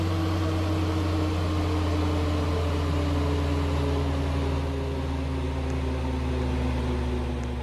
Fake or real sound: real